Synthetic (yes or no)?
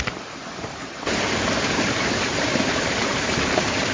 yes